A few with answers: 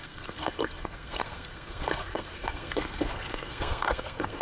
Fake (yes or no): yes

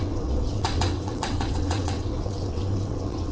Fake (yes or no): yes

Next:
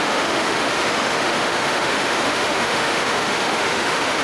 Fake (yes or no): yes